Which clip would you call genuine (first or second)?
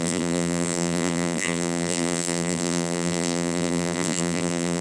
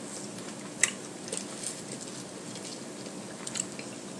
second